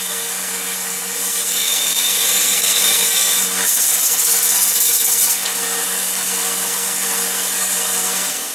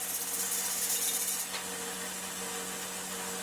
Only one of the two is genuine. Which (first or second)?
second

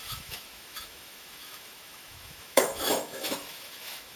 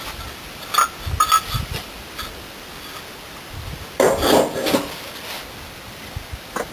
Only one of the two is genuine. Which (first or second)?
second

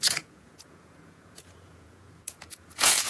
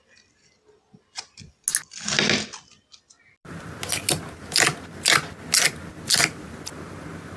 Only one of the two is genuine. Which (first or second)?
second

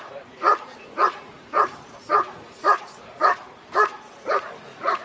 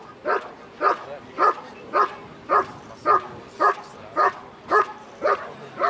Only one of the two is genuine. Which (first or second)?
second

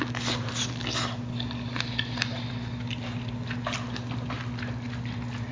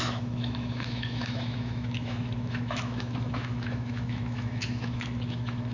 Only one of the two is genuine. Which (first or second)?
first